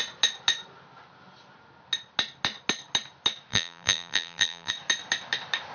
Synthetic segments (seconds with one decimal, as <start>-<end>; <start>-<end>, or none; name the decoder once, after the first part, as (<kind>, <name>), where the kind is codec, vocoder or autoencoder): 3.5-4.7 (vocoder, BigVGAN v2)